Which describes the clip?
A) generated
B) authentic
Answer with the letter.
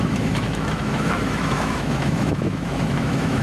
A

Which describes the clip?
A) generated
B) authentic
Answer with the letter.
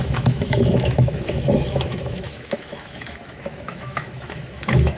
A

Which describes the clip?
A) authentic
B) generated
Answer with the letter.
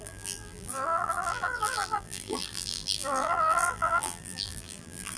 B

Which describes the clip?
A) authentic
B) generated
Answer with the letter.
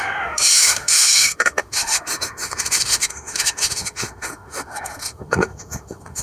B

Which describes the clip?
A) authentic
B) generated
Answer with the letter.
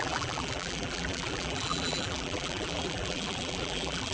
B